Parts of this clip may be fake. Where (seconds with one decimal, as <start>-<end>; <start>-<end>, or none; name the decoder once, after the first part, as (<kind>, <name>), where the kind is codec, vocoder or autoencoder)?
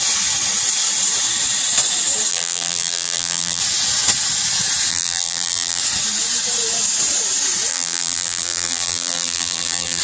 2.3-3.6 (vocoder, BigVGAN v2); 4.9-5.8; 7.7-10.0